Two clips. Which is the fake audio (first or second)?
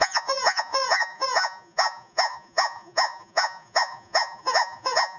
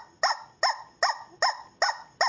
first